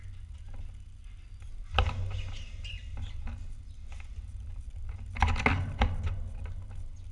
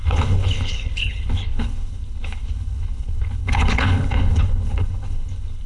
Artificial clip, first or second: second